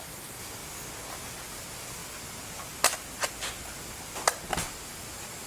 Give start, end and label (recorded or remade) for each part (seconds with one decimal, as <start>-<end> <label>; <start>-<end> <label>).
0.0-5.5 recorded